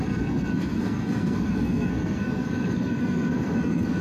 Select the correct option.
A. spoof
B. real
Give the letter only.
A